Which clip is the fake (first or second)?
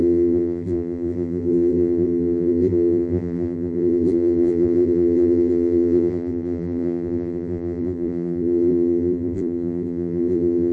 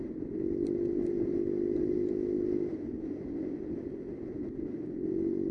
first